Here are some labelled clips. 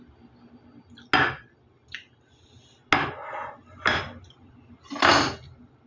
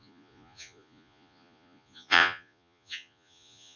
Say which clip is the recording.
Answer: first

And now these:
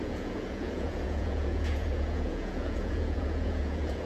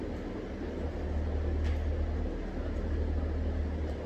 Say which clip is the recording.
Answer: second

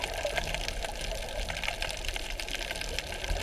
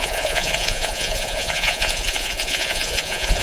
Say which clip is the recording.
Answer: first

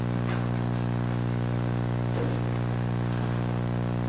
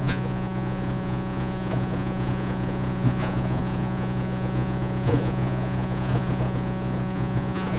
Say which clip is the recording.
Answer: first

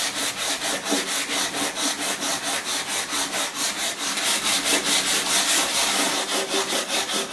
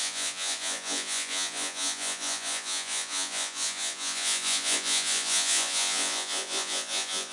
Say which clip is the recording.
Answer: first